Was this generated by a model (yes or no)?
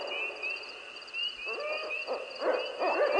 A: no